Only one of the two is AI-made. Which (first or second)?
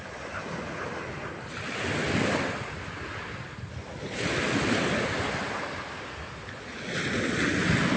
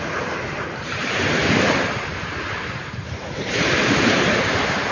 second